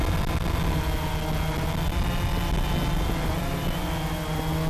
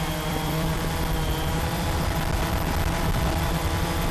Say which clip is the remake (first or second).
second